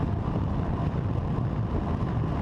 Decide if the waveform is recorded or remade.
recorded